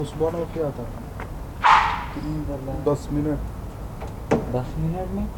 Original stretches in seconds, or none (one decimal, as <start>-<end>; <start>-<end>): 0.0-5.4